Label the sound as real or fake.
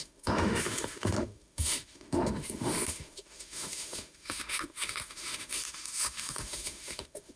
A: fake